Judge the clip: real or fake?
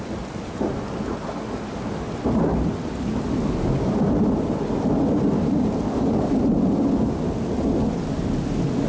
real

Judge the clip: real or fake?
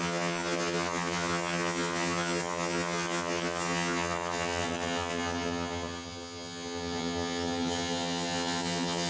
fake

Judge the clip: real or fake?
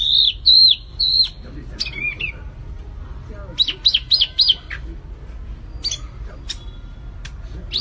real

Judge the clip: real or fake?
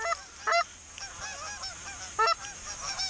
real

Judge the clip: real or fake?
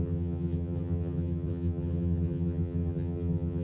fake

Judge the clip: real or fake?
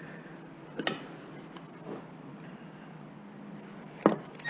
real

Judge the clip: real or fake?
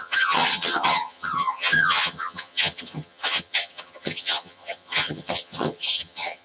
fake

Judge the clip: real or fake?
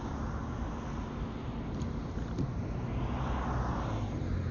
real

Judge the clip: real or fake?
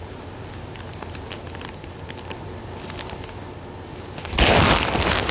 real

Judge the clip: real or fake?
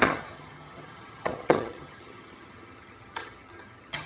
fake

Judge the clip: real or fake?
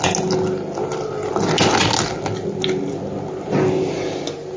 real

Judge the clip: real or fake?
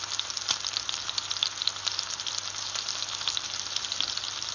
real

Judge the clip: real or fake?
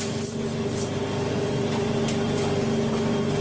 real